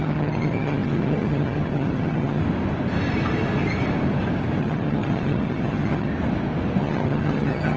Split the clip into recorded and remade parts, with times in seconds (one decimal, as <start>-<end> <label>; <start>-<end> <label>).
0.0-2.4 remade; 2.4-4.6 recorded; 4.6-6.1 remade; 6.1-6.8 recorded; 6.8-7.8 remade